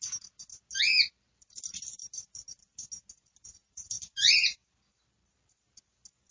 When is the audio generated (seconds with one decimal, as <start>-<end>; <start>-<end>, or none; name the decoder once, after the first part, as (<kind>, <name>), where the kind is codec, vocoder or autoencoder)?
none